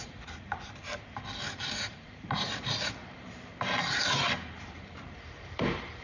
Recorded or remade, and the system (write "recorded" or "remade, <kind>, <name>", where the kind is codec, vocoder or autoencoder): remade, vocoder, BigVGAN v2